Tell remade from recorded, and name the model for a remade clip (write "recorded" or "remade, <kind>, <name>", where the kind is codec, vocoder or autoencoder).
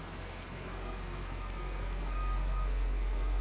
remade, codec, SNAC